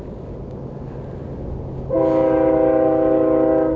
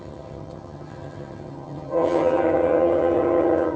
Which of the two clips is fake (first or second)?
second